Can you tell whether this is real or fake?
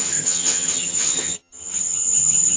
fake